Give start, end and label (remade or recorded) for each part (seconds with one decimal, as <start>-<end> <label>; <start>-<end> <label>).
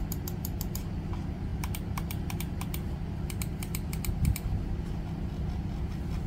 0.0-6.3 recorded